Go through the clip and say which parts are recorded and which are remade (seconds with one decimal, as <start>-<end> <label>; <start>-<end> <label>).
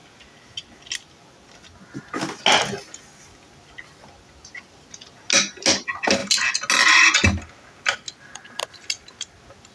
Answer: 0.0-9.7 recorded